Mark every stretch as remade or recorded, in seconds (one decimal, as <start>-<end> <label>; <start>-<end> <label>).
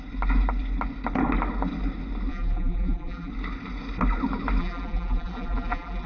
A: 0.0-2.3 recorded; 2.3-3.3 remade; 3.3-4.6 recorded; 4.6-6.1 remade